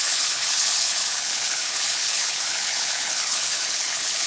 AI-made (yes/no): yes